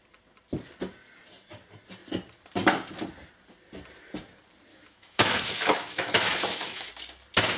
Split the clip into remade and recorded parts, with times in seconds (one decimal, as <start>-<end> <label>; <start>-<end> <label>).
0.0-4.7 recorded; 4.7-6.9 remade; 6.9-7.6 recorded